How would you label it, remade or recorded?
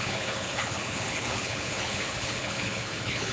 remade